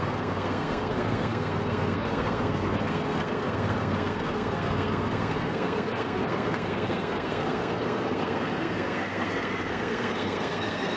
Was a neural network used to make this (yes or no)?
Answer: yes